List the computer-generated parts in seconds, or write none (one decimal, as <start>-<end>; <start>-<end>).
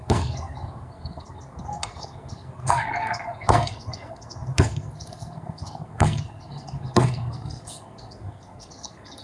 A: 0.0-9.2